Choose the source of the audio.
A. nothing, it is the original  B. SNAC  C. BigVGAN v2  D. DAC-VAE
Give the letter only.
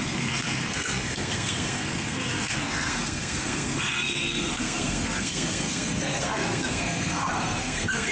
B